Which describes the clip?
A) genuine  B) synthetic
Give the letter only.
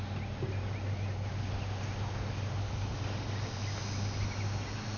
A